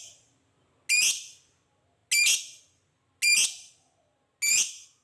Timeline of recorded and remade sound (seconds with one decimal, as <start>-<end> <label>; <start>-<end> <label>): 0.0-5.0 recorded